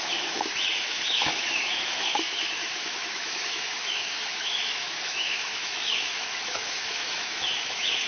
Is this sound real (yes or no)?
no